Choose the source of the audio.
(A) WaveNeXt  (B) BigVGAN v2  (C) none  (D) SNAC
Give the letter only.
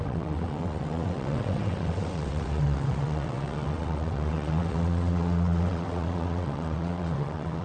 A